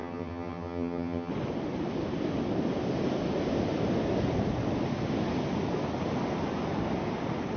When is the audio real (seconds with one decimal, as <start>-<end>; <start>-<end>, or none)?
1.3-7.6